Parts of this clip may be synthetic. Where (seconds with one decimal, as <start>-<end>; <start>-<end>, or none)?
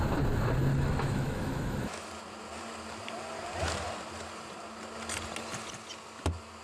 0.7-2.1